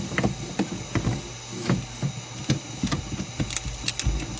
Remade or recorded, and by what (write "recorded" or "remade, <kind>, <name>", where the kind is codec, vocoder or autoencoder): recorded